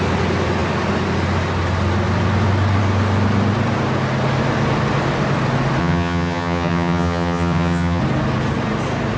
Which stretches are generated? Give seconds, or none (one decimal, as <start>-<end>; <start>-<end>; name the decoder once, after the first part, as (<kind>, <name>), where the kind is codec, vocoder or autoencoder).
5.8-8.0 (vocoder, HiFi-GAN)